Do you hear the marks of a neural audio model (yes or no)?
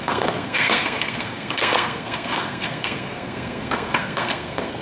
yes